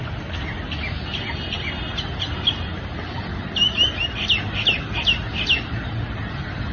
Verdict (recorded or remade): recorded